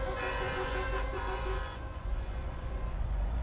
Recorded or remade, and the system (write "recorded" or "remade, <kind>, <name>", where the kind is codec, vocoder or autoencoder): remade, vocoder, Vocos